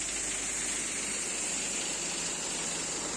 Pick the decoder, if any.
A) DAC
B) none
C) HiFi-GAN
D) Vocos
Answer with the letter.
B